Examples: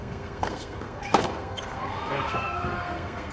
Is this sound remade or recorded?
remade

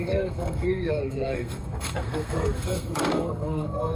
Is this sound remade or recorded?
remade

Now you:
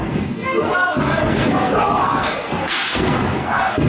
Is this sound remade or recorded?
remade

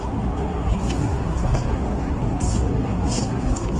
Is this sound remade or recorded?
remade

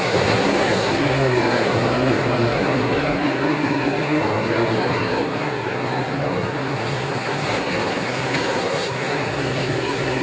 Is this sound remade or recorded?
remade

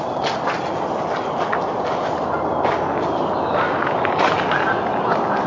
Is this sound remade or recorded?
recorded